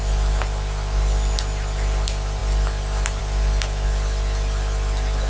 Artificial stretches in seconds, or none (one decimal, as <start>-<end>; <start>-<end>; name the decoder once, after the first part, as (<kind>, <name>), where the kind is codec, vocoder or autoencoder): none